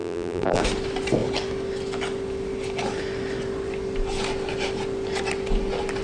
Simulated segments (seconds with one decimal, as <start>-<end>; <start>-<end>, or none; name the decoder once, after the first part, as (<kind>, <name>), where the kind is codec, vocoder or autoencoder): 0.0-0.6 (vocoder, BigVGAN v2)